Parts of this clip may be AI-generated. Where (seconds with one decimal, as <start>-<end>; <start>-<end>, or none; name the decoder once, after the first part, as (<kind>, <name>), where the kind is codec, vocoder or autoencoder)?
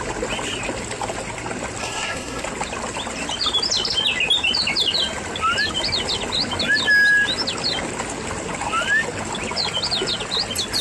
1.8-2.4 (codec, SNAC)